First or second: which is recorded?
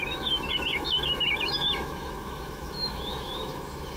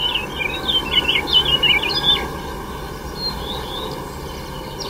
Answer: second